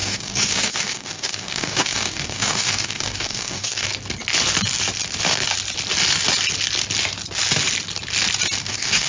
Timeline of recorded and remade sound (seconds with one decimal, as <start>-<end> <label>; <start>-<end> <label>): 0.0-3.9 remade; 3.9-8.6 recorded; 8.6-9.1 remade